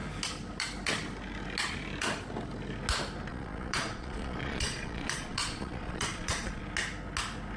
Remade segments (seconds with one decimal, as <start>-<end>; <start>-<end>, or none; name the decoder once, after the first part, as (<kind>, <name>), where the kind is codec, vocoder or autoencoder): 3.3-6.6 (vocoder, Vocos)